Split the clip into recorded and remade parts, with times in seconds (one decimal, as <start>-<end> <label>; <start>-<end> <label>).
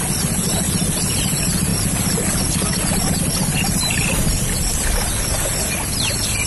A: 0.0-6.5 recorded